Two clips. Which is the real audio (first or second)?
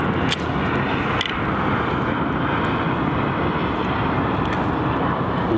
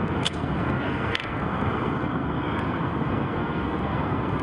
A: first